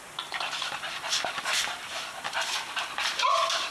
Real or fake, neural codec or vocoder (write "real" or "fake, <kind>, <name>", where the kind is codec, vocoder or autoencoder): real